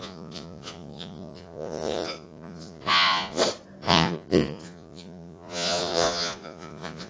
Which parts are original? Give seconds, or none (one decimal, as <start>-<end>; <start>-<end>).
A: 3.4-3.8